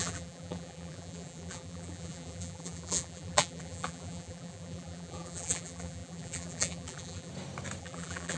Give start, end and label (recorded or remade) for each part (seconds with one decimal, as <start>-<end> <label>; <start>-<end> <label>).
0.0-7.3 remade; 7.3-7.8 recorded; 7.8-8.4 remade